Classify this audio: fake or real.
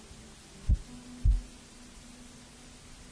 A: real